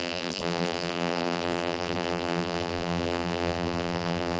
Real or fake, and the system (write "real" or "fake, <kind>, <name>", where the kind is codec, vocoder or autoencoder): fake, vocoder, BigVGAN v2